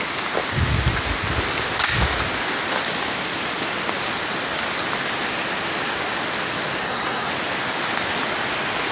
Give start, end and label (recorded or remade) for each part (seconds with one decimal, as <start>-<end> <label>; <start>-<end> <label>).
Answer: 0.0-6.8 recorded; 6.8-7.3 remade; 7.3-8.9 recorded